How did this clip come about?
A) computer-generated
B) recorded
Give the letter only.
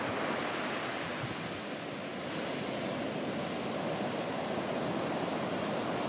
B